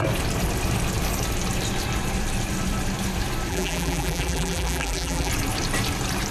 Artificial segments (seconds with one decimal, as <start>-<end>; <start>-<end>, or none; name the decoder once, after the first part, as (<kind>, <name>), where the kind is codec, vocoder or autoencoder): 3.5-5.3 (vocoder, BigVGAN v2)